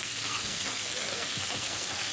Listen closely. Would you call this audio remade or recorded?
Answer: remade